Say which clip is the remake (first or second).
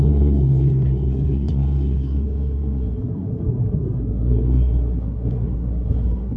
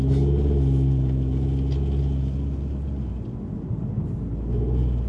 first